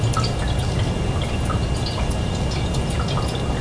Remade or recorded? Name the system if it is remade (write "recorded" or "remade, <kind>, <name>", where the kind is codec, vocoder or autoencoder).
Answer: recorded